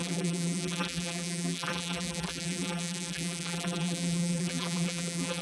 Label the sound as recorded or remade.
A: remade